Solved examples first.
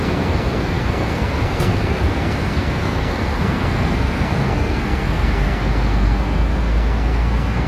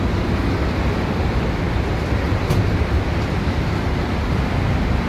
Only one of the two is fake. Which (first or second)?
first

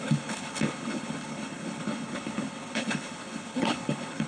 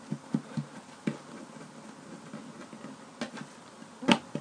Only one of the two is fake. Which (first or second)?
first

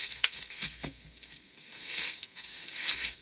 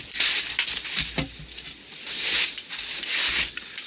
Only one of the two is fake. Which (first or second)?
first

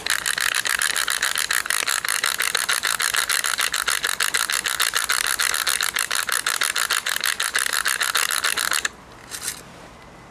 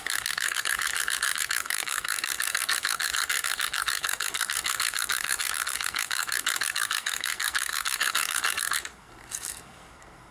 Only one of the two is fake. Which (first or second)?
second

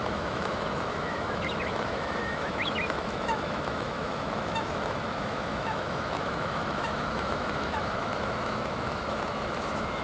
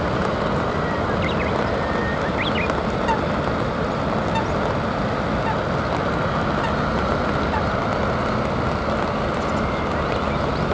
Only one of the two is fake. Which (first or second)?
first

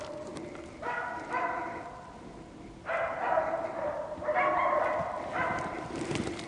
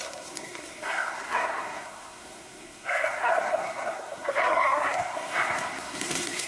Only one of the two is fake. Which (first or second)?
second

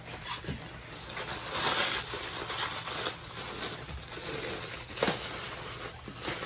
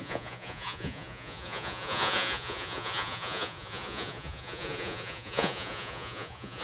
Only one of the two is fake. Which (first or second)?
second